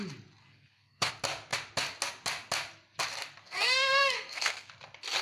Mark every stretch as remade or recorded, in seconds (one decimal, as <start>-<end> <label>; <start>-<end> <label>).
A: 0.0-0.4 recorded; 0.4-1.1 remade; 1.1-3.4 recorded; 3.4-4.7 remade; 4.7-5.2 recorded

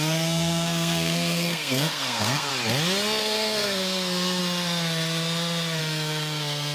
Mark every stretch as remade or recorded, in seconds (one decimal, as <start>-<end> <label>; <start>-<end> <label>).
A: 0.0-2.5 remade; 2.5-3.2 recorded; 3.2-4.4 remade; 4.4-5.8 recorded; 5.8-6.7 remade